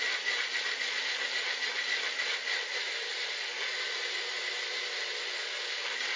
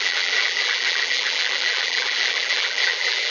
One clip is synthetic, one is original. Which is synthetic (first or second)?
second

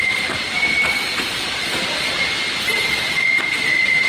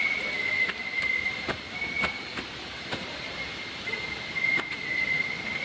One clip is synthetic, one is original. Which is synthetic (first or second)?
second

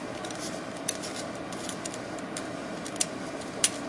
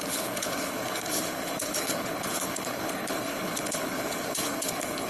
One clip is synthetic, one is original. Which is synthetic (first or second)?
second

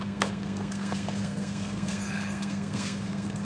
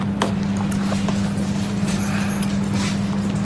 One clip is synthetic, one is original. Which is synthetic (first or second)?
first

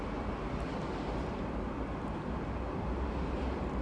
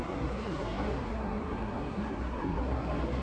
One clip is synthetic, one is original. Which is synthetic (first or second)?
second